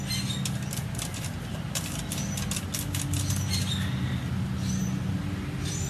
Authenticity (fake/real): real